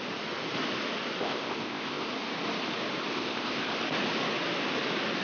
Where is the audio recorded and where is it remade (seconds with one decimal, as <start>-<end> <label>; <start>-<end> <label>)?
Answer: 0.0-1.2 recorded; 1.2-2.1 remade; 2.1-3.1 recorded; 3.1-3.8 remade; 3.8-5.2 recorded